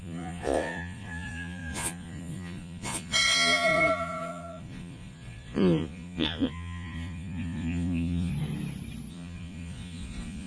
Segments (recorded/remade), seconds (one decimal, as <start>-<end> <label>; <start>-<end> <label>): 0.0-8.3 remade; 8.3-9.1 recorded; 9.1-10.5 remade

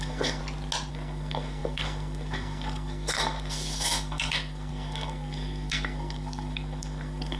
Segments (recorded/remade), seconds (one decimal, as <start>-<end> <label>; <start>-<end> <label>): 0.0-0.4 remade; 0.4-0.9 recorded; 0.9-7.4 remade

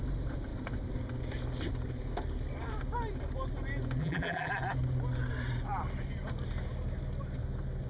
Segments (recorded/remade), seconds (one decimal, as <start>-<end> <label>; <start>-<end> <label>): 0.0-4.0 recorded; 4.0-4.5 remade; 4.5-7.9 recorded

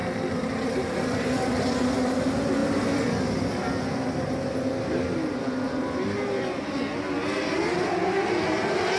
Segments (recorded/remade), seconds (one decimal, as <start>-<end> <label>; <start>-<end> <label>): 0.0-1.7 remade; 1.7-2.6 recorded; 2.6-3.3 remade; 3.3-9.0 recorded